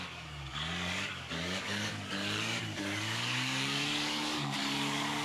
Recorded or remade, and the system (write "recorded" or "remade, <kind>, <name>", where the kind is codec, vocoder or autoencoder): remade, codec, DAC